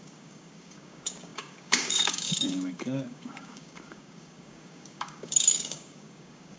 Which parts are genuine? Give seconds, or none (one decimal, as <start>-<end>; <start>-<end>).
none

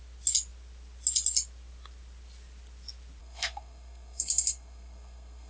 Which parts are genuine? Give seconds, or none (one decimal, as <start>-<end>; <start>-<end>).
0.0-3.2

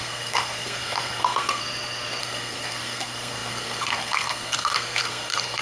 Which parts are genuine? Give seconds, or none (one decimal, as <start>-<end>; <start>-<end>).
1.6-2.2

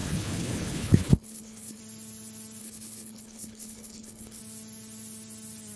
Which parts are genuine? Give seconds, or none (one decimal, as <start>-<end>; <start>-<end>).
1.8-2.6; 4.4-5.8